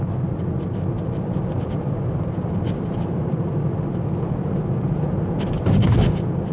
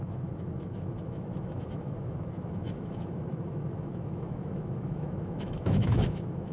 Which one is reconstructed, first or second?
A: second